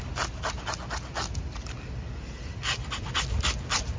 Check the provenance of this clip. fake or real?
real